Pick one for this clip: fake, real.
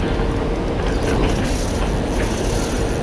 real